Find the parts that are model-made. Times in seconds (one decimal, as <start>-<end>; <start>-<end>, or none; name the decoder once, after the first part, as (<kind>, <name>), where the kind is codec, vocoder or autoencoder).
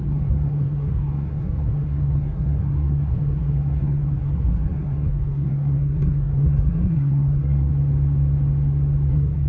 0.0-7.7 (codec, SNAC); 9.1-9.5